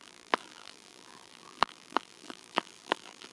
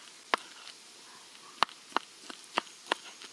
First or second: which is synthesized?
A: first